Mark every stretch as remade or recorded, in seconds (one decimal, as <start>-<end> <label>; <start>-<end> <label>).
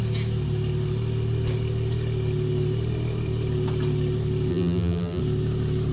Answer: 0.0-4.5 recorded; 4.5-5.2 remade; 5.2-5.9 recorded